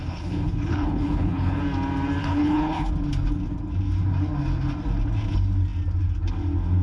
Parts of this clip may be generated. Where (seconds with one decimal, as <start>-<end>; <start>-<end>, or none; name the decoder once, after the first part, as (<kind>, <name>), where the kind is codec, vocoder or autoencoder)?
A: 0.0-1.6 (codec, HILCodec); 2.2-2.9